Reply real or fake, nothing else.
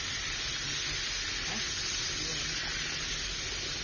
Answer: real